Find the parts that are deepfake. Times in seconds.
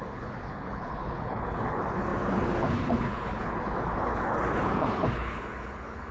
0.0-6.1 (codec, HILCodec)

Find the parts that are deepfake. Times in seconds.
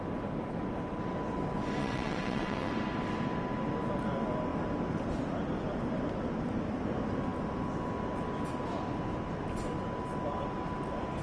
1.8-2.7 (vocoder, WaveNeXt)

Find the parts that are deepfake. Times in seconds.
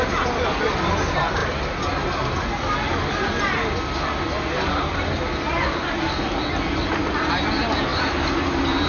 none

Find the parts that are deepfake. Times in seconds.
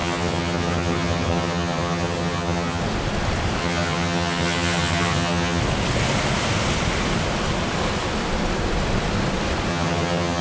0.0-2.8 (vocoder, HiFi-GAN); 3.6-5.6; 9.7-10.4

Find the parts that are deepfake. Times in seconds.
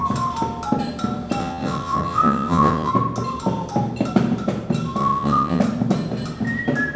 1.4-2.9 (vocoder, WaveNeXt); 5.0-5.6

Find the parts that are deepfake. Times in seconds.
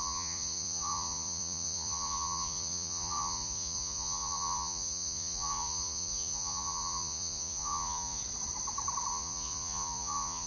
0.0-8.2 (vocoder, Vocos); 9.1-10.5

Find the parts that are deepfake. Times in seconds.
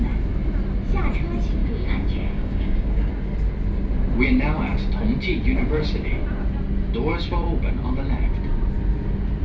1.6-3.1 (codec, DAC)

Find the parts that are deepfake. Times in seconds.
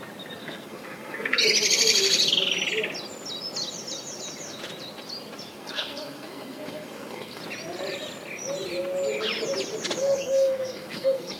0.4-1.4 (codec, SNAC); 5.5-7.4; 10.0-11.4